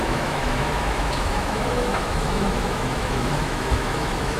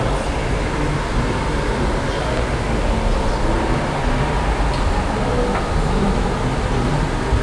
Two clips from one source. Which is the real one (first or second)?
second